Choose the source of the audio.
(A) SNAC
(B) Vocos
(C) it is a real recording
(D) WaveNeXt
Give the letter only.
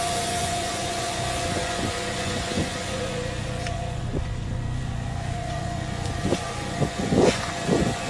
B